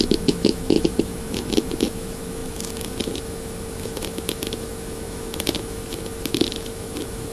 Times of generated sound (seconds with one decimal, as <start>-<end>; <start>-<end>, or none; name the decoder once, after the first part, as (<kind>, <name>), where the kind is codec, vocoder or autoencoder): 0.0-7.3 (autoencoder, DAC-VAE)